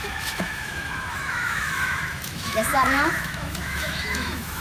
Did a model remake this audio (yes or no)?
yes